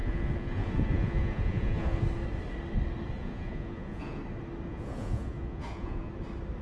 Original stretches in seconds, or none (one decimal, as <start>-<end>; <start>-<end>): 2.0-3.2; 4.2-4.7; 6.1-6.6